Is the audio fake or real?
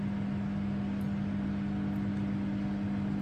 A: real